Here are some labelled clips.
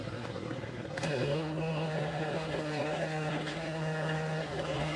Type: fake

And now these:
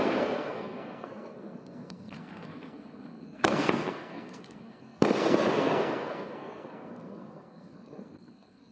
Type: fake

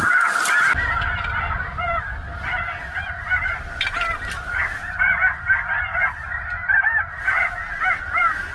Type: real